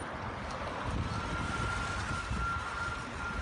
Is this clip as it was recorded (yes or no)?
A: yes